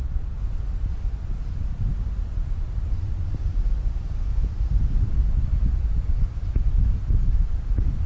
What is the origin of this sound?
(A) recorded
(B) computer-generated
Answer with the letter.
A